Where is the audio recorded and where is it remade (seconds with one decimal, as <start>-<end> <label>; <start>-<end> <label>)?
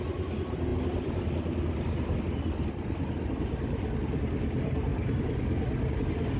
0.0-6.4 recorded